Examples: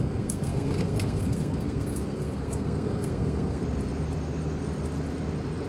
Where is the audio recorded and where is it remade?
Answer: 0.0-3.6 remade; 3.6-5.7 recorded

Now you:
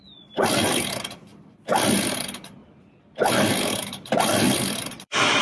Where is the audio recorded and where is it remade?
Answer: 0.0-1.3 recorded; 1.3-1.9 remade; 1.9-2.6 recorded; 2.6-5.4 remade